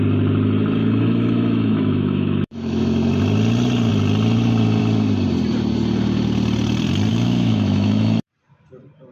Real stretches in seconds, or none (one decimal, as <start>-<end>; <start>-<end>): 0.0-0.8; 2.8-7.1; 8.3-9.1